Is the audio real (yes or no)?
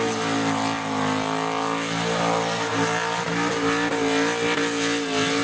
yes